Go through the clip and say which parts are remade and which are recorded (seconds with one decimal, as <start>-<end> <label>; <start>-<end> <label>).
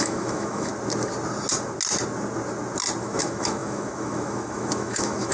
0.0-0.7 remade; 0.7-3.0 recorded; 3.0-5.3 remade